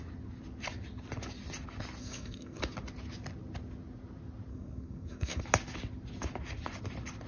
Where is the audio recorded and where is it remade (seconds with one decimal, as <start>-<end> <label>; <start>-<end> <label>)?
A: 0.0-2.0 recorded; 2.0-2.6 remade; 2.6-4.5 recorded; 4.5-5.4 remade; 5.4-7.3 recorded